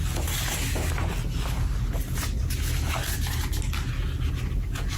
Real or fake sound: real